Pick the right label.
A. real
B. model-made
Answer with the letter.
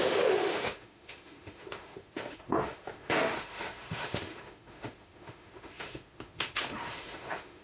B